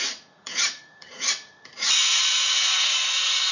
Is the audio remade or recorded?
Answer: remade